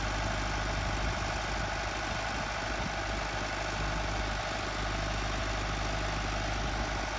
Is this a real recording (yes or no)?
yes